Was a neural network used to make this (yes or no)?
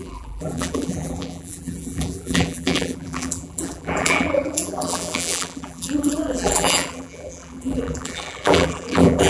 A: yes